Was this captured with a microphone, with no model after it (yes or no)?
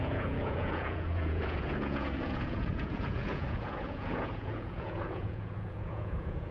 no